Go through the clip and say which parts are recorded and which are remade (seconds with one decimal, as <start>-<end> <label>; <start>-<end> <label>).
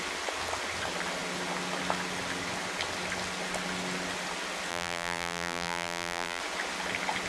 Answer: 0.0-4.7 recorded; 4.7-6.4 remade; 6.4-7.3 recorded